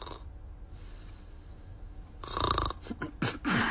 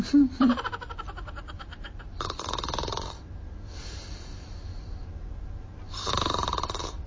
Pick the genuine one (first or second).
first